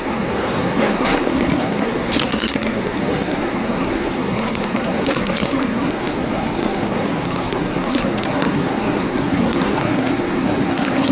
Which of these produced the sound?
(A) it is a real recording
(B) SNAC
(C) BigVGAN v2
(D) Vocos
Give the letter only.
B